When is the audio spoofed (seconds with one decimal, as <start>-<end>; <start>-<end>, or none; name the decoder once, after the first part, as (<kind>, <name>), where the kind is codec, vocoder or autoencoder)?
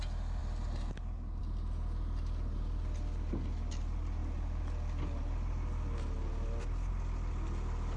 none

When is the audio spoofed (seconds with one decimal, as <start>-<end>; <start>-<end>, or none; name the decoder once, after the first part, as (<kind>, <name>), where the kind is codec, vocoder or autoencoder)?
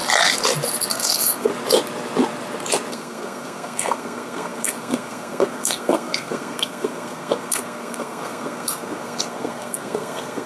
0.9-1.5 (codec, SNAC); 2.9-10.5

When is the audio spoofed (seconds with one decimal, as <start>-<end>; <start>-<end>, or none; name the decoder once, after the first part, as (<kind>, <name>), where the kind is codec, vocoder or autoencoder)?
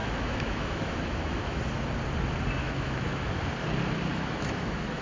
0.0-1.6 (autoencoder, DAC-VAE); 2.6-3.4; 4.1-5.0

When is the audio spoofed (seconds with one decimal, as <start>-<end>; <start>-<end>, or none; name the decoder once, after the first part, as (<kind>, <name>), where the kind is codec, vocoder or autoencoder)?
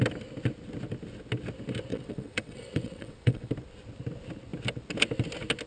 1.9-3.5 (vocoder, WaveNeXt)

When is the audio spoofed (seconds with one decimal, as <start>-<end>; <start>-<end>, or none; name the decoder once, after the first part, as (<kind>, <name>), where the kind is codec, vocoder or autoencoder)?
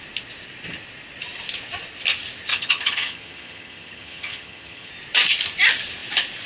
2.5-4.9 (vocoder, HiFi-GAN)